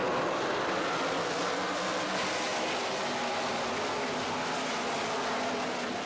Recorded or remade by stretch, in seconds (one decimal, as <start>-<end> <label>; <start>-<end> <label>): 0.0-2.5 recorded; 2.5-3.0 remade; 3.0-6.1 recorded